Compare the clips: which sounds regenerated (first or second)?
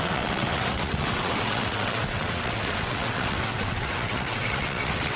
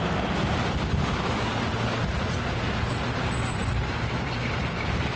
first